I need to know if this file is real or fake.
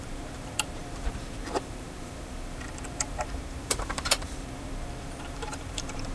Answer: fake